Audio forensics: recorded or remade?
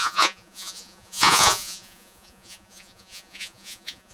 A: remade